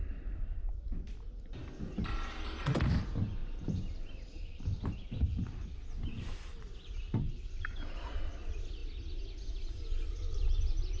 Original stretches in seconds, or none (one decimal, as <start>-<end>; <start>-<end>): 1.6-3.4; 8.2-11.0